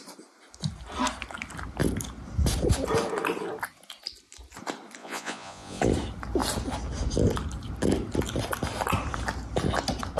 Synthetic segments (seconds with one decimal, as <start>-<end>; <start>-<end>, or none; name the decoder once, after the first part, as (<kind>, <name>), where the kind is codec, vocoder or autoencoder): 5.0-5.8 (vocoder, Vocos)